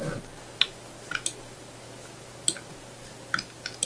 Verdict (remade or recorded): recorded